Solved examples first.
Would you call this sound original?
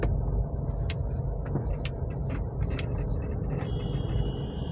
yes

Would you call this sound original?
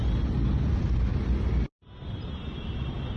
yes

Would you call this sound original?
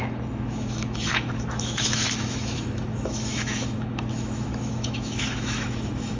no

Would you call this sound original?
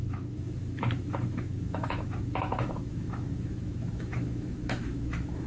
no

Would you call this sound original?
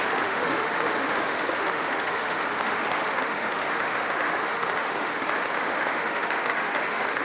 no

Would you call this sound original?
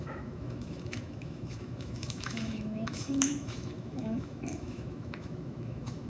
no